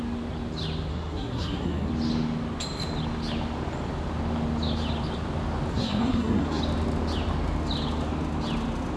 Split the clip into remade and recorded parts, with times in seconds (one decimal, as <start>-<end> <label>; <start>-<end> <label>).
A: 0.0-0.9 recorded; 0.9-1.9 remade; 1.9-5.7 recorded; 5.7-6.6 remade; 6.6-9.0 recorded